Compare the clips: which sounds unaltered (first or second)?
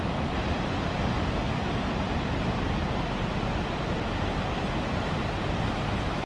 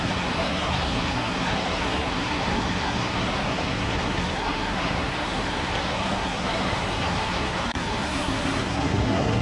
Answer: first